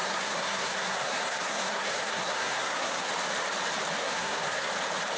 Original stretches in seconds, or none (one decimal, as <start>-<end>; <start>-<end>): 3.1-4.0; 4.7-5.2